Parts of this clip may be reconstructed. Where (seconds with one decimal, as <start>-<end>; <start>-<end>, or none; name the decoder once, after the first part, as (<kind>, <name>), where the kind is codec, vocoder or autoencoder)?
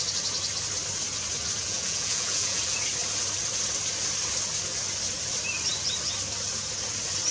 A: 1.6-2.6 (vocoder, Vocos)